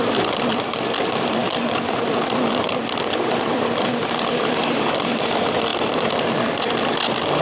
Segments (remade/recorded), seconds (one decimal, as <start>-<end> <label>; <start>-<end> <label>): 0.0-7.4 recorded